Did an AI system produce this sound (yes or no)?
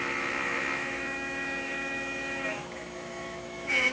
yes